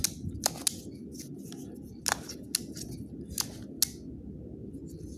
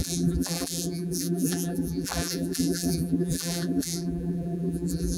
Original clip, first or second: first